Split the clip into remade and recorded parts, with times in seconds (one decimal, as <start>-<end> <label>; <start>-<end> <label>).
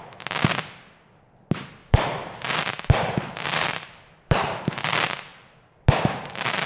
0.0-1.8 recorded; 1.8-4.6 remade; 4.6-6.7 recorded